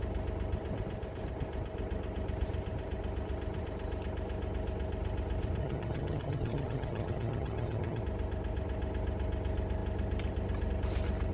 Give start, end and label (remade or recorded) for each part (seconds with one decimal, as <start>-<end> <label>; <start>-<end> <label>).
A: 0.0-5.6 recorded; 5.6-8.0 remade; 8.0-11.3 recorded